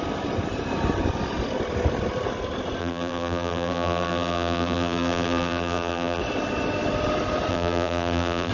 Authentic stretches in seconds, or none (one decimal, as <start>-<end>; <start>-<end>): 0.0-2.8; 6.2-7.5